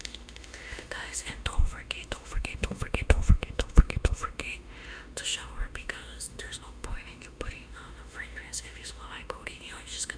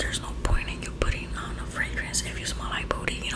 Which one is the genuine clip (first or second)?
second